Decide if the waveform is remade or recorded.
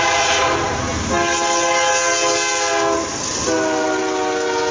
recorded